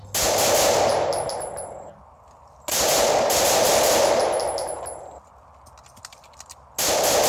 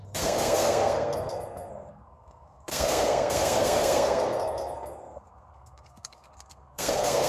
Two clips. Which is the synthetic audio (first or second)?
second